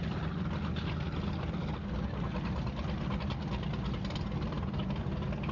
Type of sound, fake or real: real